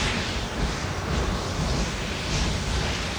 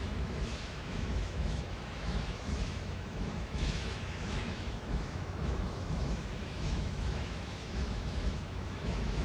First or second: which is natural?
first